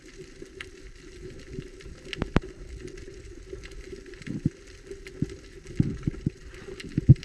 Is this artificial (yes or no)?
no